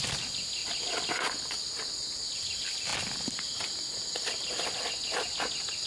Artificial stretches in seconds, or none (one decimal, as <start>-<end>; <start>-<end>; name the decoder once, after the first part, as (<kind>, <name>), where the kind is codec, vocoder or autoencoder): none